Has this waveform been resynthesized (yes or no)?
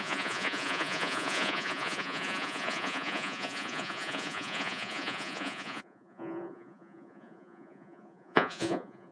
yes